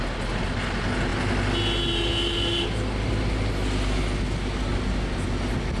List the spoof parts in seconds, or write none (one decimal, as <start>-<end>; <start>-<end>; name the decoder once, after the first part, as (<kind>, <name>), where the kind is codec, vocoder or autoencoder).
none